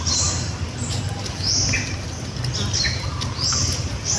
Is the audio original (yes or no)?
yes